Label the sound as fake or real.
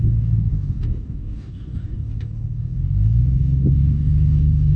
fake